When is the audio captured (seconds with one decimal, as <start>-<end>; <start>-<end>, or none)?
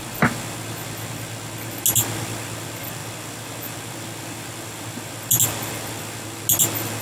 0.0-7.0